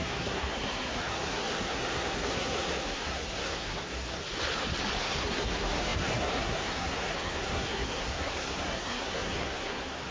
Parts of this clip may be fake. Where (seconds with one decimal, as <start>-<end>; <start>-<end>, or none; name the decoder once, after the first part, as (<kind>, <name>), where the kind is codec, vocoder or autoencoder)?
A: 0.0-4.2 (codec, SNAC); 5.0-10.1